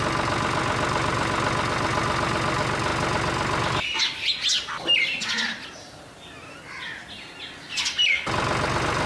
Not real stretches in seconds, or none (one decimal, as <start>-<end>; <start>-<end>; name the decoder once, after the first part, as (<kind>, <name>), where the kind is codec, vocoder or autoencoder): none